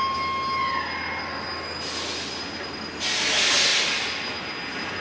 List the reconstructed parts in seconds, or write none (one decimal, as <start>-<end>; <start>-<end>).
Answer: none